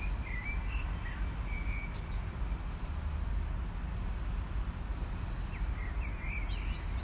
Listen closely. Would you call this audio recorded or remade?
recorded